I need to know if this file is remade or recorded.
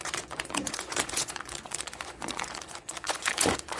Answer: remade